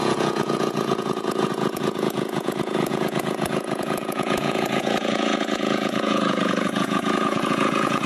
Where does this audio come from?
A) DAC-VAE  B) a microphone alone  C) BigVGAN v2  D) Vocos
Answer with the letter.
D